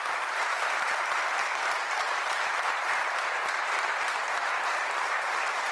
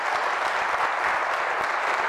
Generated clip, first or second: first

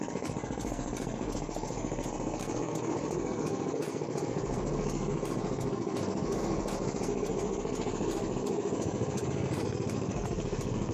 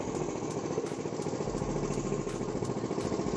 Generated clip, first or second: first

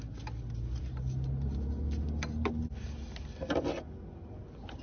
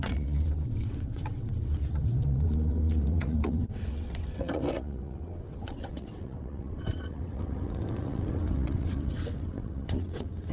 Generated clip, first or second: second